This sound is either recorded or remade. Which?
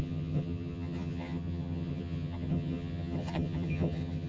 remade